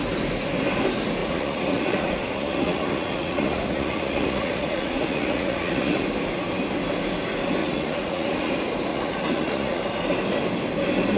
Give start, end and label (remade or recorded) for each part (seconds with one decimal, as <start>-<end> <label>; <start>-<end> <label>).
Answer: 0.0-1.2 recorded; 1.2-6.0 remade; 6.0-7.6 recorded; 7.6-8.5 remade; 8.5-8.9 recorded; 8.9-9.8 remade; 9.8-11.2 recorded